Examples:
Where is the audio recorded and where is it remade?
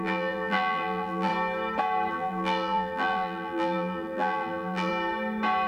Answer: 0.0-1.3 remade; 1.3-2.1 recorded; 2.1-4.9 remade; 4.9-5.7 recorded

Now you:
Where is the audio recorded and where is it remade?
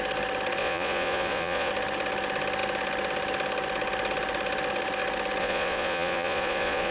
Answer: 0.0-0.6 recorded; 0.6-1.7 remade; 1.7-5.4 recorded; 5.4-6.9 remade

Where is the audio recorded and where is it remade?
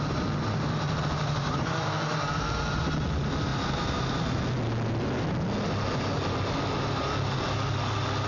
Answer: 0.0-3.5 remade; 3.5-8.3 recorded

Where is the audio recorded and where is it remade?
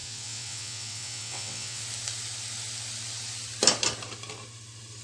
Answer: 0.0-1.8 remade; 1.8-5.0 recorded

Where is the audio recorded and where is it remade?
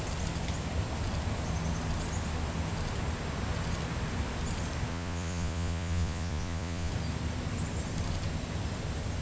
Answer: 0.0-4.9 recorded; 4.9-6.9 remade; 6.9-9.2 recorded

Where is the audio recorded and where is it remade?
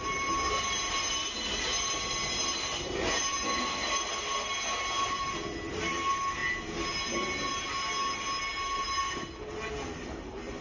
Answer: 0.0-10.6 recorded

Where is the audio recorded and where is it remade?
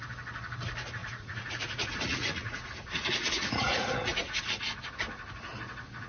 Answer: 0.0-1.0 recorded; 1.0-4.5 remade; 4.5-6.1 recorded